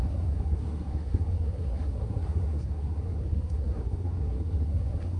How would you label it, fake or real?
fake